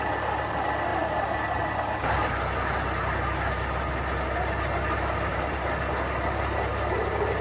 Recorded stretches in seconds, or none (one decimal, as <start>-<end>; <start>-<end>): 0.0-7.4